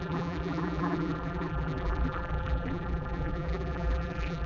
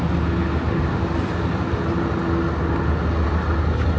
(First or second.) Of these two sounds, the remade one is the first